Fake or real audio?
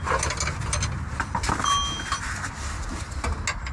real